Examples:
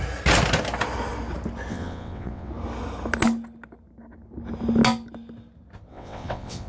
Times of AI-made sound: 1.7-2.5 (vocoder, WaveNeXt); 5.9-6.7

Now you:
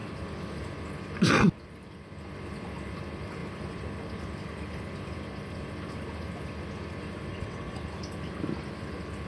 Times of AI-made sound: 7.3-7.8 (vocoder, WaveNeXt)

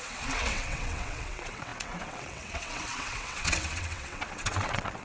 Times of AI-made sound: 0.0-5.0 (vocoder, WaveNeXt)